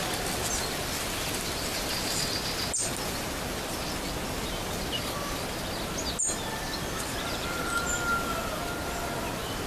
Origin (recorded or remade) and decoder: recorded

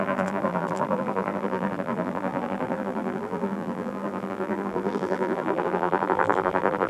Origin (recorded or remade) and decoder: remade, vocoder, BigVGAN v2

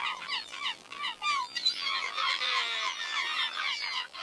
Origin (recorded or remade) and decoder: remade, vocoder, BigVGAN v2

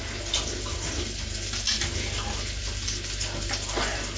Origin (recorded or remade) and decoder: recorded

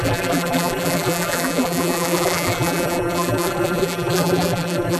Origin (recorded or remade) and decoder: remade, vocoder, BigVGAN v2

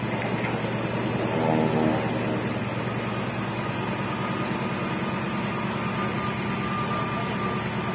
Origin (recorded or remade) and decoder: recorded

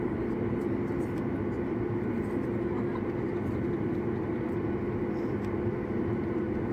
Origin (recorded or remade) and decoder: recorded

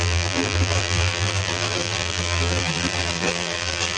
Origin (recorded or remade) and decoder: remade, vocoder, BigVGAN v2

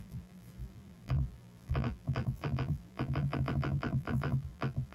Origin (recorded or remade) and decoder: remade, vocoder, BigVGAN v2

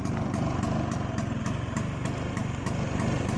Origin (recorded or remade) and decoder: recorded